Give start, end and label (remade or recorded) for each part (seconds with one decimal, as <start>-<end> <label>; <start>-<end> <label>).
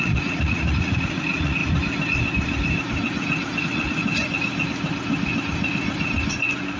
0.0-1.6 remade; 1.6-3.6 recorded; 3.6-4.0 remade; 4.0-6.8 recorded